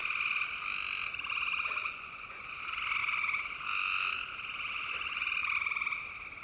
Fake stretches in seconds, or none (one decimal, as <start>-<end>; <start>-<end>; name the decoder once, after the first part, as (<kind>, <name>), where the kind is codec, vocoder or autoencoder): 1.8-2.6 (vocoder, Vocos)

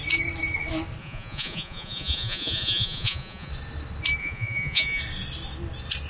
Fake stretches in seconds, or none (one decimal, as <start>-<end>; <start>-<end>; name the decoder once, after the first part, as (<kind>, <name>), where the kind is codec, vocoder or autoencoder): 1.0-3.5 (vocoder, Vocos); 4.2-5.0

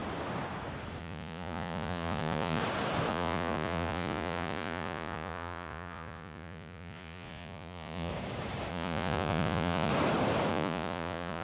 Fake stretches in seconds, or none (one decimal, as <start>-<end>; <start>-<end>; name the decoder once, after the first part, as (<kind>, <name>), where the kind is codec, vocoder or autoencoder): 1.0-2.6 (vocoder, Vocos); 3.1-8.1; 8.7-9.9; 10.5-11.4

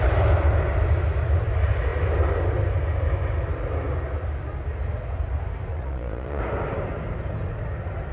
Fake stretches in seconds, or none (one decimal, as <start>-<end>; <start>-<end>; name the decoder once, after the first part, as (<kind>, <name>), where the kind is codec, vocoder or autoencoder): 5.7-6.4 (vocoder, Vocos)